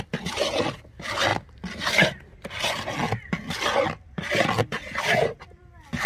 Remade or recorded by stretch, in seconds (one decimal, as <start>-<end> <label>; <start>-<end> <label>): 0.0-6.1 recorded